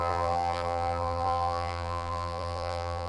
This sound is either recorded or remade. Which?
remade